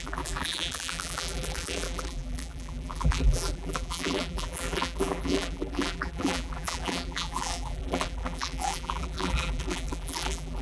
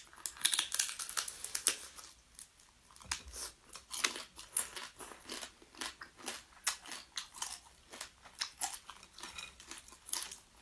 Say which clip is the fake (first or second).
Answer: first